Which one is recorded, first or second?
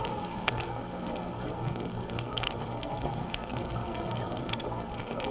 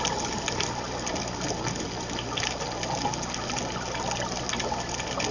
second